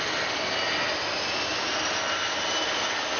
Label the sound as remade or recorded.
recorded